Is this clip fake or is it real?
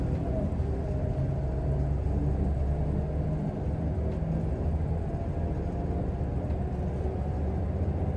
real